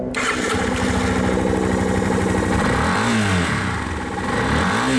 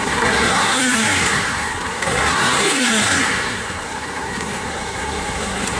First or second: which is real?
first